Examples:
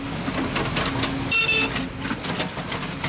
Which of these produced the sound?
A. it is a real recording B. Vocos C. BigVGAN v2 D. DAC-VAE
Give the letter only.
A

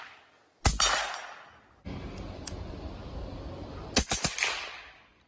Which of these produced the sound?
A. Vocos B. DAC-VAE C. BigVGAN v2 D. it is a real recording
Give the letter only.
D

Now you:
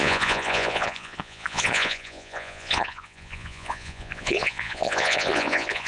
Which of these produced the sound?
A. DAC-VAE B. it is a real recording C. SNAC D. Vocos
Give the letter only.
D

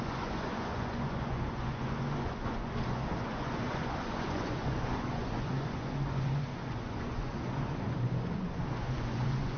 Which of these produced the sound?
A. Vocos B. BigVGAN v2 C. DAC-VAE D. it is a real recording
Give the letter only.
A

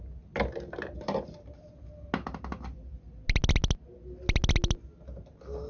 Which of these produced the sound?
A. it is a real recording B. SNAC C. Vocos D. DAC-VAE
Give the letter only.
A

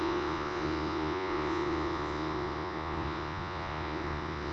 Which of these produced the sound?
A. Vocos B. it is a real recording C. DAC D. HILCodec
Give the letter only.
A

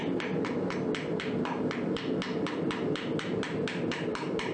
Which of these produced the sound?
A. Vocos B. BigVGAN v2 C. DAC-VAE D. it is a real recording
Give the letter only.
D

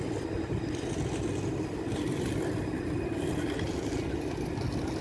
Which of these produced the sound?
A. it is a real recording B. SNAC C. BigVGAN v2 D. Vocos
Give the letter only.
A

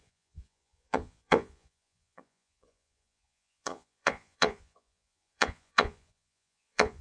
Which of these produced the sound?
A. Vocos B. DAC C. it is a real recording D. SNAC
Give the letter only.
A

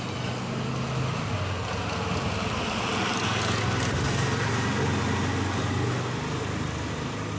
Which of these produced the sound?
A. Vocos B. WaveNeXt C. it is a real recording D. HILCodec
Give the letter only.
C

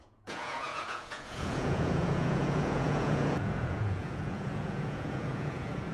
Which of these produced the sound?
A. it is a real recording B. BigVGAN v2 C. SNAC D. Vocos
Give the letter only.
D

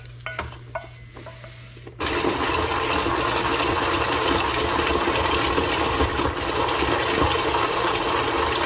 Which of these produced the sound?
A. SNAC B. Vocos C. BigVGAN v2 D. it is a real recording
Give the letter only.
D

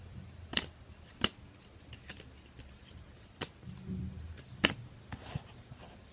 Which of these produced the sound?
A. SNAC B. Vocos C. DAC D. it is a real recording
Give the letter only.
D